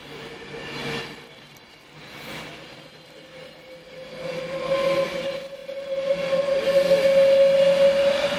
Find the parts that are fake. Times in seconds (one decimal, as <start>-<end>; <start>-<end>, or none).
none